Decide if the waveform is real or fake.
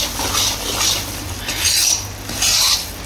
real